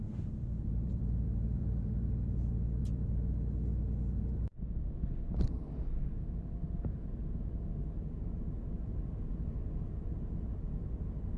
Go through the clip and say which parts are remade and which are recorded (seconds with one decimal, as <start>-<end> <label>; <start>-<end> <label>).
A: 0.0-1.9 remade; 1.9-2.8 recorded; 2.8-3.3 remade; 3.3-11.4 recorded